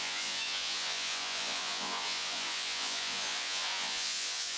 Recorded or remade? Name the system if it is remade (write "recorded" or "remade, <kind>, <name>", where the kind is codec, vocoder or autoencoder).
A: remade, vocoder, Vocos